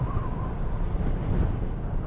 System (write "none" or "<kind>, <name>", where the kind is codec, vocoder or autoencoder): vocoder, BigVGAN v2